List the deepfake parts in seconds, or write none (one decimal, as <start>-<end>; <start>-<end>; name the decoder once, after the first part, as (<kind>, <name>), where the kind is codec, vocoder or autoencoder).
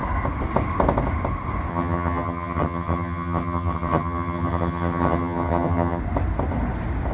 1.7-6.0 (vocoder, HiFi-GAN)